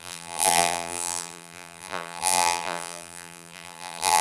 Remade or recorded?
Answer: remade